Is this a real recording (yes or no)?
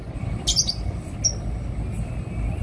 yes